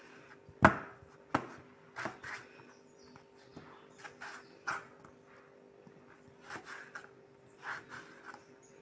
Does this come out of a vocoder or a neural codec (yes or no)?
no